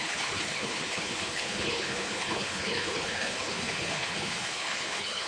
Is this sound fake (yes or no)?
yes